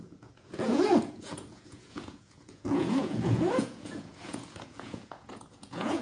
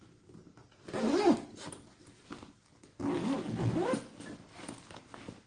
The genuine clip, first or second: second